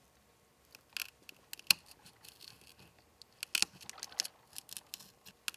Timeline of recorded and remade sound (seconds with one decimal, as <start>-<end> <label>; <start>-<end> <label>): 0.0-5.6 recorded